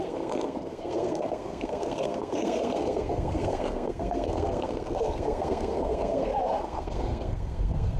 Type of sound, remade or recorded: remade